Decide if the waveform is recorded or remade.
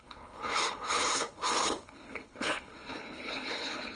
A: remade